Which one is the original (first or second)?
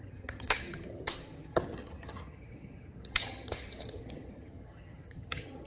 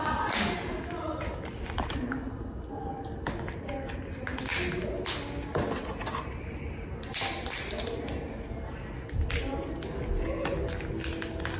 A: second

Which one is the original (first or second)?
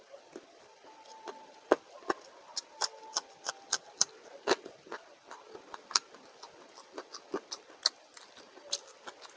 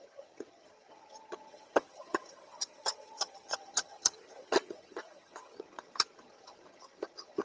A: first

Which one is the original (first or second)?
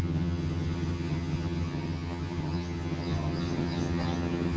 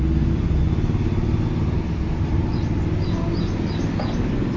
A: second